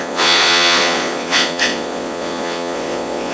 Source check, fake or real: fake